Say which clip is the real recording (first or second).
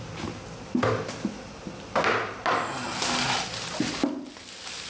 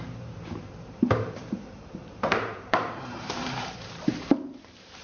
first